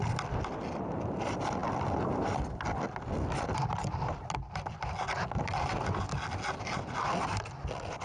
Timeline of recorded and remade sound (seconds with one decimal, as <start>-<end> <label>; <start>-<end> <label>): 0.0-8.0 recorded